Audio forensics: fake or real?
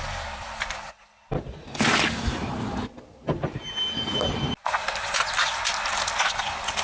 real